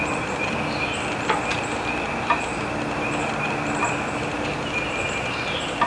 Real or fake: real